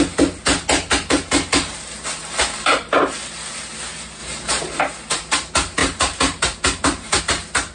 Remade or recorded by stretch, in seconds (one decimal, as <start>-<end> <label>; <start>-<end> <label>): 0.0-4.2 recorded; 4.2-4.8 remade; 4.8-5.8 recorded; 5.8-7.2 remade; 7.2-7.7 recorded